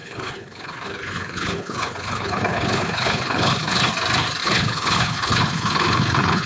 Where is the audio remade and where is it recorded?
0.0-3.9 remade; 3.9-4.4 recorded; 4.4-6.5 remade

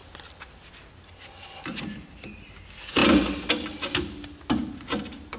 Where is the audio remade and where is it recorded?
0.0-5.4 recorded

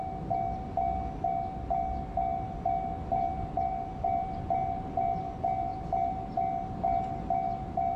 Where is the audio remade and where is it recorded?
0.0-8.0 recorded